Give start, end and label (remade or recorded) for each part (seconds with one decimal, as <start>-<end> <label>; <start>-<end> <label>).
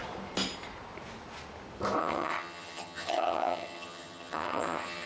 0.0-2.0 recorded; 2.0-5.1 remade